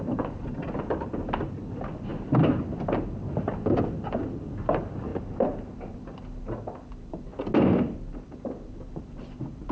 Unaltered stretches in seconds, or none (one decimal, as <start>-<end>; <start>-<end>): 5.1-5.9; 7.3-7.9